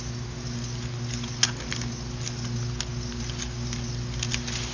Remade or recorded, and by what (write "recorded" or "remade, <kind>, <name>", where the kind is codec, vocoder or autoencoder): recorded